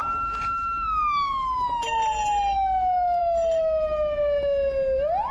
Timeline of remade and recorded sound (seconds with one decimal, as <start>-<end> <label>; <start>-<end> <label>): 0.0-5.3 recorded